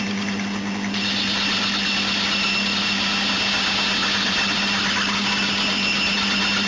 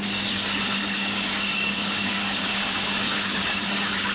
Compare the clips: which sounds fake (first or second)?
second